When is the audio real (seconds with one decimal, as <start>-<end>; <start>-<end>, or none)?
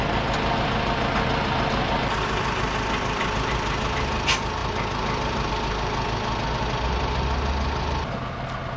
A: 0.0-8.8